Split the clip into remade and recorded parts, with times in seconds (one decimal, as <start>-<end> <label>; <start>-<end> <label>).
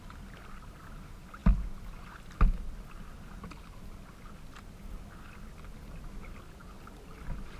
0.0-7.6 recorded